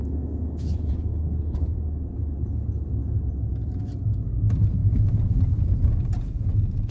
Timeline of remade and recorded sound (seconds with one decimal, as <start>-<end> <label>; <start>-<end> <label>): 0.0-0.9 remade; 0.9-6.9 recorded